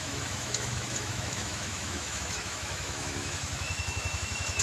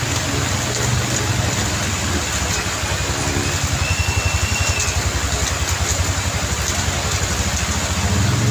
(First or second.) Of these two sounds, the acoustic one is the second